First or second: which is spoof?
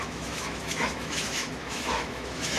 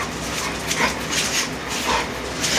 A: first